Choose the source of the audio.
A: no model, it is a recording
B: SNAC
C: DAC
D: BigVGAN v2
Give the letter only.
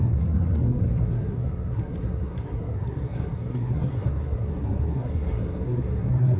B